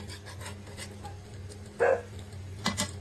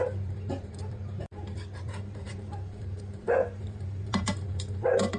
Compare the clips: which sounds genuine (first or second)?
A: first